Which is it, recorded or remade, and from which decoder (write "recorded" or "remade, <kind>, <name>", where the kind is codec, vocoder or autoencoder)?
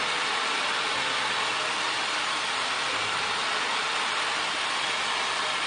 recorded